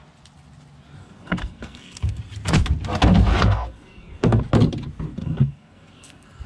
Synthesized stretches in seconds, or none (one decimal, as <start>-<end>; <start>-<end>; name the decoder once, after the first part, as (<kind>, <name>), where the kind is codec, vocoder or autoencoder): 1.0-2.2 (codec, SNAC); 3.3-4.4; 5.2-6.5

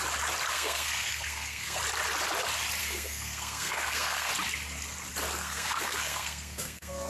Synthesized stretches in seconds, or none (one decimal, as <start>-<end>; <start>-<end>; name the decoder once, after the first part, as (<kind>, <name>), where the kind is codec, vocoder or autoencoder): 0.5-1.8 (codec, SNAC); 2.8-4.3; 5.4-7.1